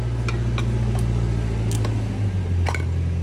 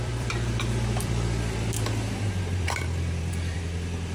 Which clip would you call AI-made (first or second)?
second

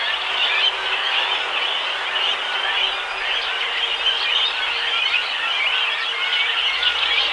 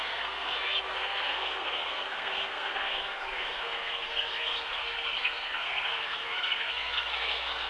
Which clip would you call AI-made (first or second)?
second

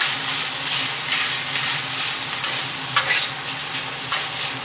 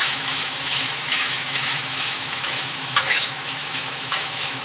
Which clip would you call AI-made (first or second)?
second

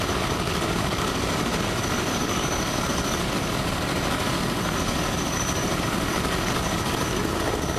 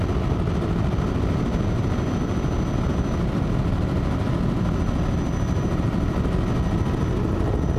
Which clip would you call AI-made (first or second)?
first